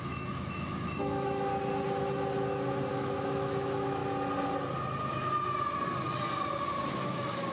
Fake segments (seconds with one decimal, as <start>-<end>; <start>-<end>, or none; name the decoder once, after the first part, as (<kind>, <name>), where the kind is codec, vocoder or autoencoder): 0.0-1.5 (autoencoder, DAC-VAE); 2.9-4.0; 6.9-7.5